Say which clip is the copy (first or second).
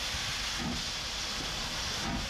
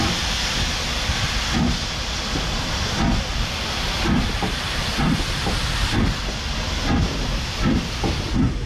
second